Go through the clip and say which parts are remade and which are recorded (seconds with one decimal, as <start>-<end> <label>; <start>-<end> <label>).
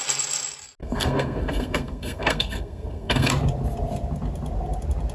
0.0-0.8 recorded; 0.8-3.3 remade; 3.3-5.1 recorded